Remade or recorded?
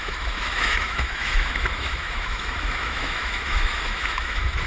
remade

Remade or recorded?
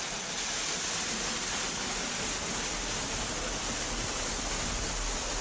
recorded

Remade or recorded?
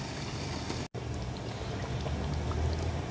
recorded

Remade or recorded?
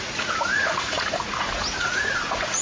remade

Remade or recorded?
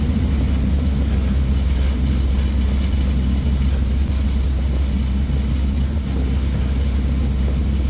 recorded